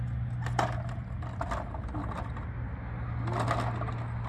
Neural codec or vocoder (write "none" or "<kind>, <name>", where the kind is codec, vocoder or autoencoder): none